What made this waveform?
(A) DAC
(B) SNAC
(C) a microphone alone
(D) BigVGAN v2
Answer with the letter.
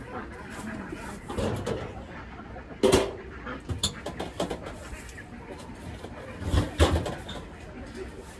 C